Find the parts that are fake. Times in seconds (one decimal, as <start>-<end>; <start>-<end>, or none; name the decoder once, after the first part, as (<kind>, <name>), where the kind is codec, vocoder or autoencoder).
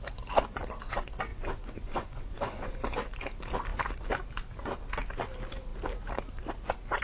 1.3-2.7 (vocoder, Vocos)